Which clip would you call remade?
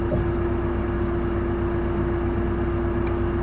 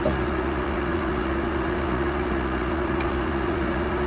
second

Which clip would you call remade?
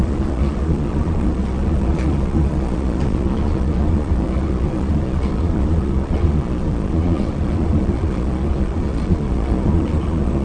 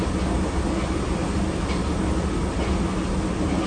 first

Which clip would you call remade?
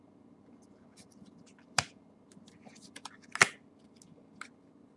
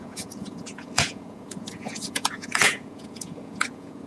second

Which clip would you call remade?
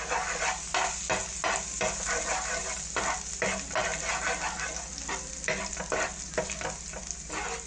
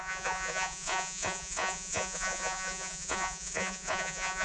second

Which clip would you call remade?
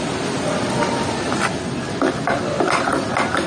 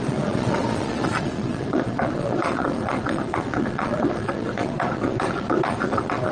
second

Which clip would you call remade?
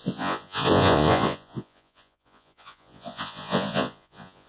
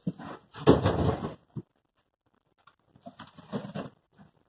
first